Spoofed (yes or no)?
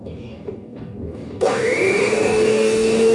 yes